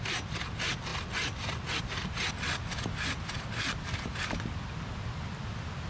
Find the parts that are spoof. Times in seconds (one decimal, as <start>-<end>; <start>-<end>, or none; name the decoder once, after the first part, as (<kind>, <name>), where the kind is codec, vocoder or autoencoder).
none